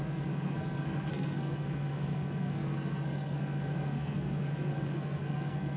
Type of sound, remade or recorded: remade